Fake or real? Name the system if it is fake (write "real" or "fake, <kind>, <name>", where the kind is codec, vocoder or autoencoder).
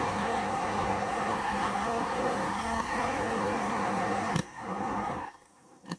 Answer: fake, codec, SNAC